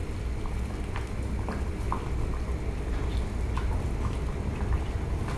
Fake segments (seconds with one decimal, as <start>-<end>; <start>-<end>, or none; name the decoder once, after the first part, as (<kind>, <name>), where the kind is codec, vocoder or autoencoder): none